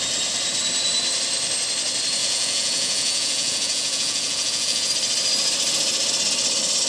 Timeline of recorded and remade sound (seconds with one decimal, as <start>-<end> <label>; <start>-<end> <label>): 0.0-2.2 recorded; 2.2-4.9 remade; 4.9-6.9 recorded

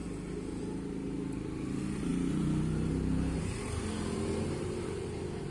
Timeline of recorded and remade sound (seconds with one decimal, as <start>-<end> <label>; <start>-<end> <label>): 0.0-2.1 recorded; 2.1-5.5 remade

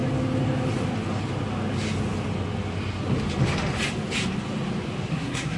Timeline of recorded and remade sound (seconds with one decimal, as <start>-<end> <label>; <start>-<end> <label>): 0.0-5.1 recorded; 5.1-5.6 remade